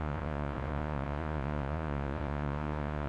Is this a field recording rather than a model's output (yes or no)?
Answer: no